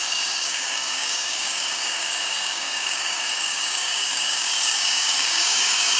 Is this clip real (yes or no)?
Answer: no